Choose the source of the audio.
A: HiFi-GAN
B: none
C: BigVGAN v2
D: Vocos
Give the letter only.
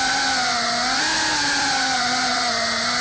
C